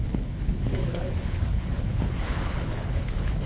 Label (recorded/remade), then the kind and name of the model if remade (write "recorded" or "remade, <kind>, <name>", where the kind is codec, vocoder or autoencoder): remade, codec, HILCodec